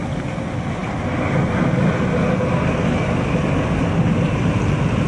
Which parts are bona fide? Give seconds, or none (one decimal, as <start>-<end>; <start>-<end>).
0.0-5.1